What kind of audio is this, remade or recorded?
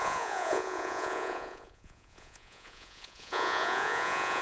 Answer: remade